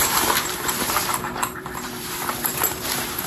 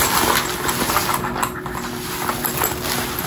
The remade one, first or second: first